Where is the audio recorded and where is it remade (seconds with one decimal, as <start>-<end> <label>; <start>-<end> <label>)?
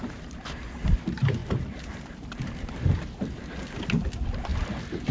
0.0-1.4 recorded; 1.4-3.4 remade; 3.4-5.1 recorded